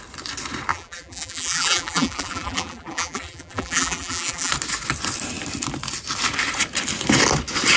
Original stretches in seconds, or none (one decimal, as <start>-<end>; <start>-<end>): 0.0-0.7; 4.5-7.8